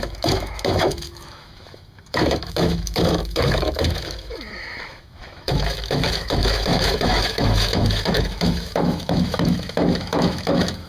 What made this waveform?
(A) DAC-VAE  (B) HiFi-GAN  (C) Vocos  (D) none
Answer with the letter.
A